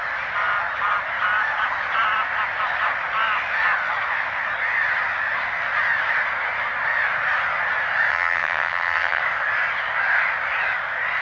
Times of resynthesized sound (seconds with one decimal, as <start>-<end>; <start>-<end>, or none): 8.1-9.2